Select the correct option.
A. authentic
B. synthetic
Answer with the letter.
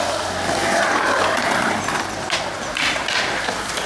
A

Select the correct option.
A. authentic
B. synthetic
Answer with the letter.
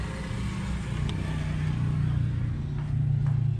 A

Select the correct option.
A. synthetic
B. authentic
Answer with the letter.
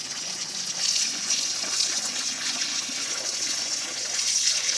A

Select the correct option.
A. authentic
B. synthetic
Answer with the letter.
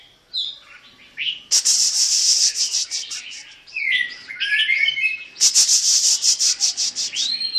A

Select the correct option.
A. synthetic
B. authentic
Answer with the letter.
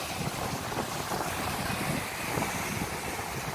B